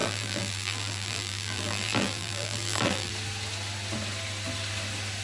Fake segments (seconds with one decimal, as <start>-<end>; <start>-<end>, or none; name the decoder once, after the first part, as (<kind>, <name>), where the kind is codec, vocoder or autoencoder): 0.0-3.1 (vocoder, BigVGAN v2)